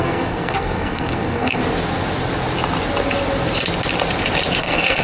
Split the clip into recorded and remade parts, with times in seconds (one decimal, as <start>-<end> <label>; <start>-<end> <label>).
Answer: 0.0-1.6 remade; 1.6-4.6 recorded; 4.6-5.0 remade